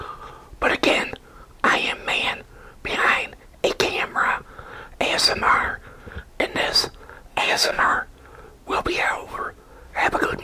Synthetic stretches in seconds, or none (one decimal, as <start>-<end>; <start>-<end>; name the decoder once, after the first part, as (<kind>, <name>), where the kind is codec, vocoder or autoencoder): 7.3-8.0 (codec, DAC)